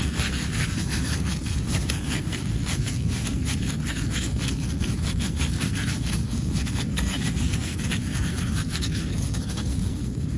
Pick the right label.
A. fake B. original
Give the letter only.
A